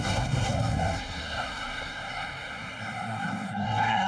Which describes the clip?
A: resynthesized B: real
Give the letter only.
A